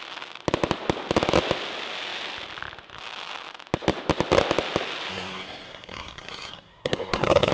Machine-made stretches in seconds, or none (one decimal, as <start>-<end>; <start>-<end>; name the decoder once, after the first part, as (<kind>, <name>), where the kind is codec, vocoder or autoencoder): 5.1-7.5 (codec, SNAC)